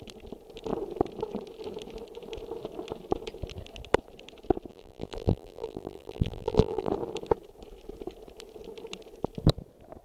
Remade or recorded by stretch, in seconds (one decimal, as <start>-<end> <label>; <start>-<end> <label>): 0.0-4.7 recorded; 4.7-6.9 remade; 6.9-10.0 recorded